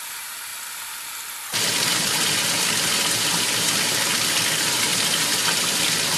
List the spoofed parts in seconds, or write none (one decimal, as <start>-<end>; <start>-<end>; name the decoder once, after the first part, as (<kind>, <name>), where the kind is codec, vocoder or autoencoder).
none